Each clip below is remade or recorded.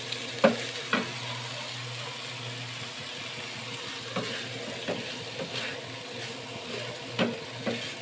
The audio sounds recorded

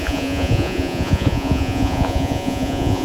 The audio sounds remade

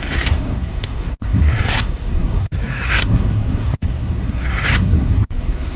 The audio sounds remade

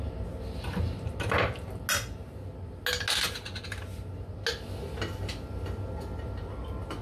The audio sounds recorded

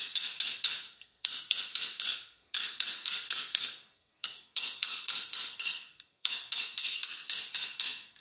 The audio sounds remade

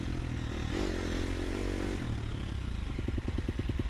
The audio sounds recorded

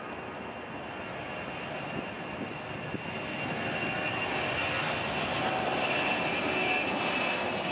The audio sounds recorded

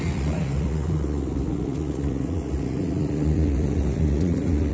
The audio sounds remade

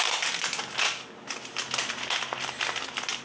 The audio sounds recorded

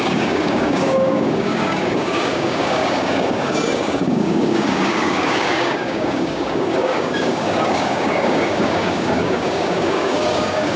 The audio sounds remade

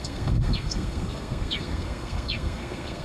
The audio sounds remade